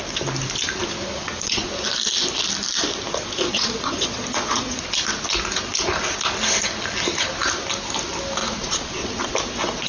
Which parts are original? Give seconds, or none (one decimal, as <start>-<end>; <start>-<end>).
0.0-1.1; 1.7-3.2; 4.8-8.4; 9.3-9.9